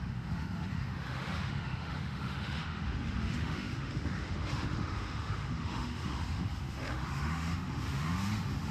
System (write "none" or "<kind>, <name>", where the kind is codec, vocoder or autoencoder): autoencoder, DAC-VAE